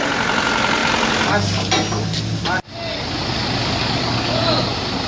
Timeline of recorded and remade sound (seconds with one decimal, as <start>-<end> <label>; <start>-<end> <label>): 0.0-3.6 recorded; 3.6-4.4 remade; 4.4-5.1 recorded